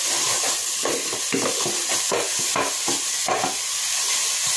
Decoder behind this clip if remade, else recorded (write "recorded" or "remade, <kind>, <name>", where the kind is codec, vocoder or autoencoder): recorded